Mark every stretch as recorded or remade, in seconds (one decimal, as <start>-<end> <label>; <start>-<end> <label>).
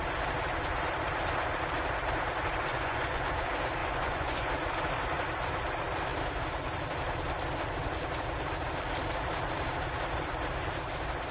0.0-2.7 recorded; 2.7-3.3 remade; 3.3-3.8 recorded; 3.8-4.5 remade; 4.5-11.3 recorded